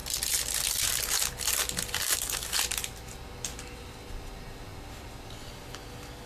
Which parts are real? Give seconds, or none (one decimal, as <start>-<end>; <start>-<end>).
0.0-4.7; 5.5-6.3